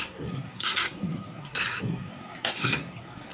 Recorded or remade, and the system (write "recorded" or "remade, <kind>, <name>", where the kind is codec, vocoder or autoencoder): remade, codec, SNAC